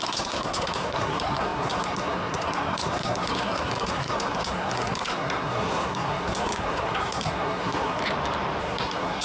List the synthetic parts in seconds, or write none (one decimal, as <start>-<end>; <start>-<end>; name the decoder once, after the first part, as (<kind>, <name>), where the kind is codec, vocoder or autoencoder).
0.0-8.0 (codec, SNAC); 8.6-9.2